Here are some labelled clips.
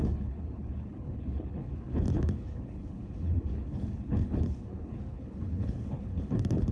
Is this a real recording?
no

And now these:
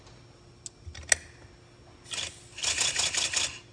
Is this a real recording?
yes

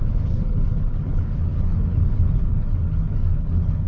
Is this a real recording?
no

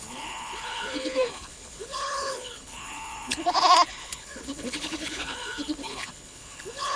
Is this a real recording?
no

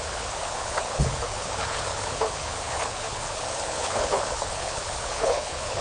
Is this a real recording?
no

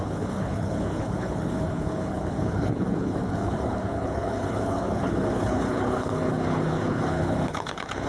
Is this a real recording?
no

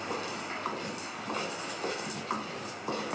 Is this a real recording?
yes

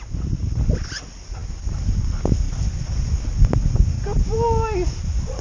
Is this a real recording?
yes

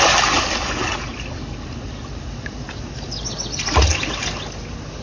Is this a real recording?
yes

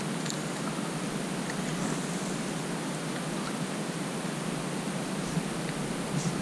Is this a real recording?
yes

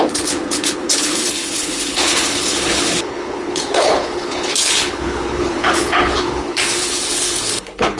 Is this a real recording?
no